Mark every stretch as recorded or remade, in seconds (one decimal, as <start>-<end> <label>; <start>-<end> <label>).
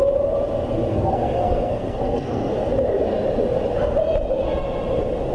0.0-0.9 recorded; 0.9-2.5 remade; 2.5-5.3 recorded